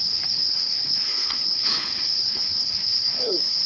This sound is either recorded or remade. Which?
remade